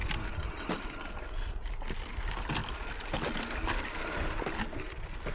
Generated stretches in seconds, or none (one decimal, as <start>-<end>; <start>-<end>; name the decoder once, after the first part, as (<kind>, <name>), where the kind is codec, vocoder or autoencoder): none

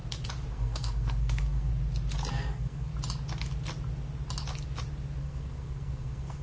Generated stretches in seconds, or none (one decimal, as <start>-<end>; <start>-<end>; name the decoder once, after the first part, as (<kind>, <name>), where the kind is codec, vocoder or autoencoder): 0.5-1.7 (codec, SNAC); 2.3-2.9; 5.2-6.4

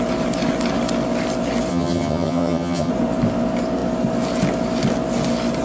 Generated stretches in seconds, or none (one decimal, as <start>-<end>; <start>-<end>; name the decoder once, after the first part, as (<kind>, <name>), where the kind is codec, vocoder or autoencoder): 1.7-2.9 (vocoder, HiFi-GAN)